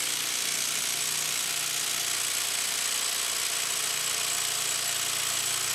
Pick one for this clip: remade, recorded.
recorded